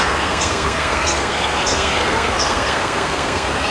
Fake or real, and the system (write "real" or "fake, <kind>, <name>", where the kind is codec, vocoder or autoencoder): fake, codec, SNAC